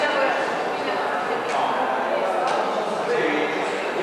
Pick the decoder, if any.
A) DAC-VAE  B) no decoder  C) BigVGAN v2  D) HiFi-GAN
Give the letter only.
B